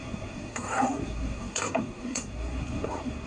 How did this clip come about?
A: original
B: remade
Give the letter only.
B